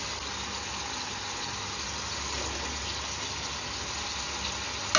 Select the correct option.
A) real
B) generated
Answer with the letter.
A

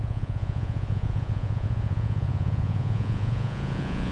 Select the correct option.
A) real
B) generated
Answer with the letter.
B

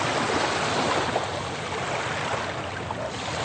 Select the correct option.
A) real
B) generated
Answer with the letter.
A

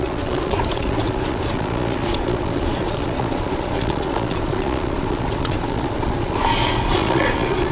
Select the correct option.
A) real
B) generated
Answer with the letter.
B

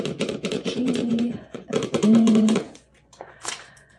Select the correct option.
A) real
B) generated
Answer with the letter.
B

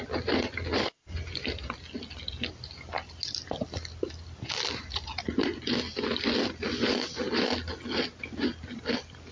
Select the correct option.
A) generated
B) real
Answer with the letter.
B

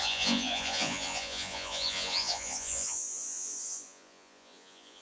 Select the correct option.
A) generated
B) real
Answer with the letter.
A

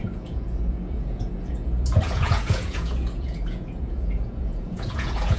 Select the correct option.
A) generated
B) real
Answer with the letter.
A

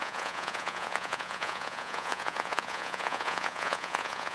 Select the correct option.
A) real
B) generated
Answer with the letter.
B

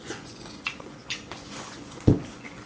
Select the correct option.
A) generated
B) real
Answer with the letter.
A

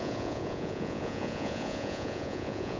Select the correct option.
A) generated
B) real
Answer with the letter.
A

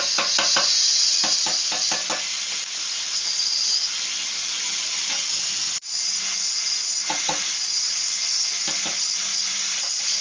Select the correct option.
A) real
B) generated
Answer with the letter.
A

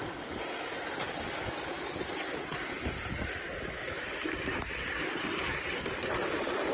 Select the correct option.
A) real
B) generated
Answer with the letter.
A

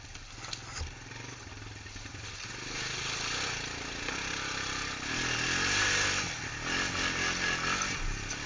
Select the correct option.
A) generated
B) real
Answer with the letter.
B